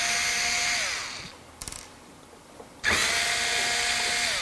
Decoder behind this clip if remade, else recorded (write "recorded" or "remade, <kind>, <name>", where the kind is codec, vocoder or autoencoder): recorded